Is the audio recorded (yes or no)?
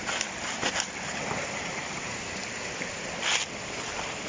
yes